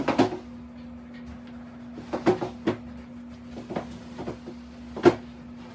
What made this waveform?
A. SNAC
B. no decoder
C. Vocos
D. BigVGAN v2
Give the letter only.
B